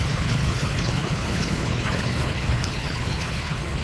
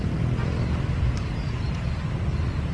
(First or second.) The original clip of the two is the second